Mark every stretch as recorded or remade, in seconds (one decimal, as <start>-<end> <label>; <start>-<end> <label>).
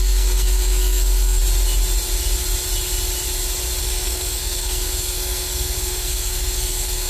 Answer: 0.0-1.4 remade; 1.4-3.8 recorded; 3.8-7.1 remade